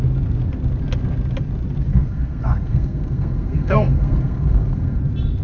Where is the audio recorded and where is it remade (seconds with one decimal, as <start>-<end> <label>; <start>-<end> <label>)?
0.0-1.9 recorded; 1.9-5.0 remade; 5.0-5.4 recorded